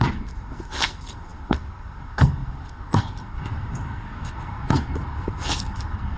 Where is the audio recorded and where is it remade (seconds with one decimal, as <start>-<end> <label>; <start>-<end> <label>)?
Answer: 0.0-6.2 remade